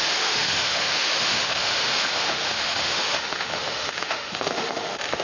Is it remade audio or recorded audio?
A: remade